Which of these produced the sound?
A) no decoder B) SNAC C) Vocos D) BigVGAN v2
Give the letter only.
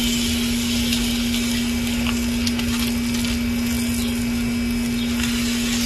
A